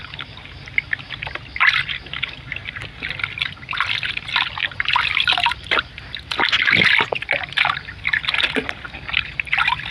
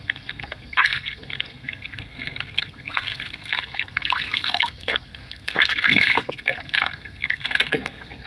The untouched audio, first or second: first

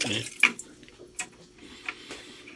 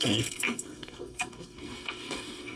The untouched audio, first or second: first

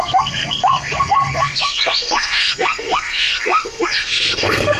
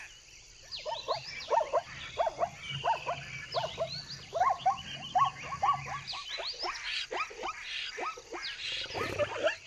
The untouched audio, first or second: second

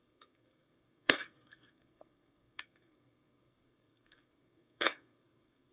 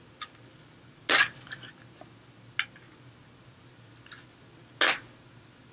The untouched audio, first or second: second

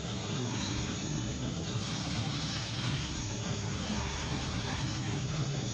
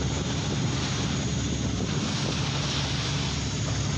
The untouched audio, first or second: second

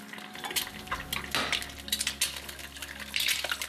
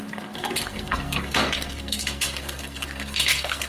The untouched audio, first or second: first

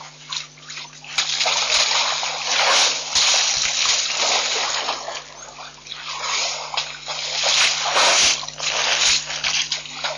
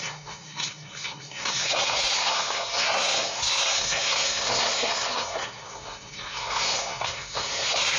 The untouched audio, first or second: first